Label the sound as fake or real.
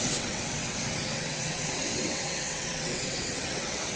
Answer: fake